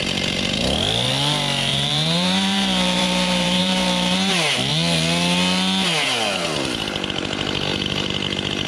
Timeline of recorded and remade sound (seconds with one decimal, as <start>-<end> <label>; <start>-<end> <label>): 0.0-1.7 recorded; 1.7-4.3 remade; 4.3-8.7 recorded